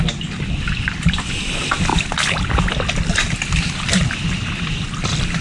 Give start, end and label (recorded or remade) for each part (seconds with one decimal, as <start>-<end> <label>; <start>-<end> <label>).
0.0-5.4 recorded